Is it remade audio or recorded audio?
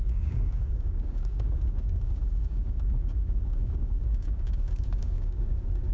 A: remade